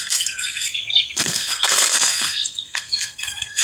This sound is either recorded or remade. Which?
remade